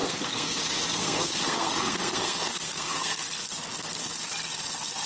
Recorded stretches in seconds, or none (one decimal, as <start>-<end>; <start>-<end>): 0.6-1.0; 3.2-5.1